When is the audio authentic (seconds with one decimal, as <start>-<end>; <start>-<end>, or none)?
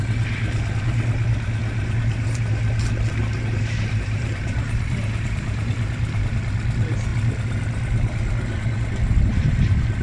0.0-1.6; 2.5-3.2; 6.3-10.0